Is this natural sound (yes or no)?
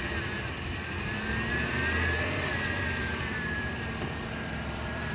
no